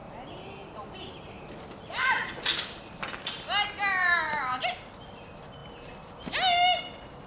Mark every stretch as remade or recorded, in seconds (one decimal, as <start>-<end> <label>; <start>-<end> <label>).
0.0-1.4 remade; 1.4-4.0 recorded; 4.0-4.6 remade; 4.6-5.6 recorded; 5.6-6.1 remade; 6.1-7.3 recorded